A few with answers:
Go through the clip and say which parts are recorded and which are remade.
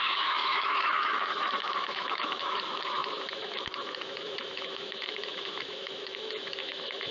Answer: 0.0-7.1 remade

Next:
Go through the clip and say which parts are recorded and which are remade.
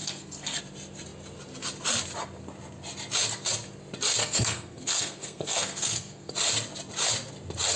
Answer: 0.0-0.6 remade; 0.6-4.2 recorded; 4.2-6.3 remade; 6.3-7.8 recorded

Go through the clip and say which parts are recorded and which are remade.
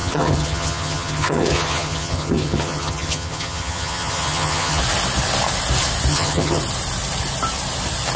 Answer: 0.0-4.8 remade; 4.8-6.1 recorded; 6.1-6.6 remade; 6.6-8.2 recorded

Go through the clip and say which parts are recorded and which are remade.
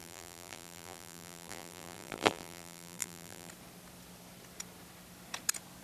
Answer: 0.0-3.5 remade; 3.5-5.8 recorded